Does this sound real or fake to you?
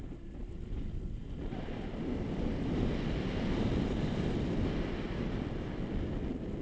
real